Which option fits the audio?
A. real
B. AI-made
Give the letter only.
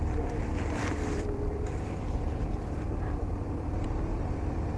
B